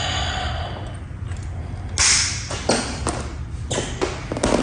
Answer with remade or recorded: recorded